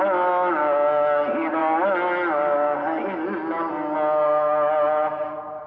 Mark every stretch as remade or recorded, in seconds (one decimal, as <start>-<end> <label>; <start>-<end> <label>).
0.0-5.7 recorded